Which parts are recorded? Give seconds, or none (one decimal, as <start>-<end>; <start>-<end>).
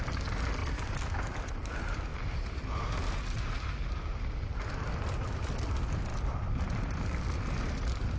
0.0-6.1; 6.8-8.2